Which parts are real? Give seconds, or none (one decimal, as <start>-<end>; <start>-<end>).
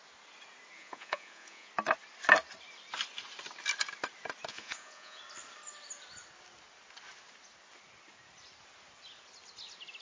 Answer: 0.0-0.8; 1.7-4.5; 5.2-10.0